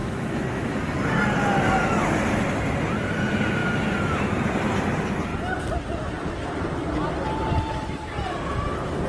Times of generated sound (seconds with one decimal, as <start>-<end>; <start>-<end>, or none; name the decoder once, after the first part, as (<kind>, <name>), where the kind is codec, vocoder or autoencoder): 0.0-0.8 (autoencoder, DAC-VAE)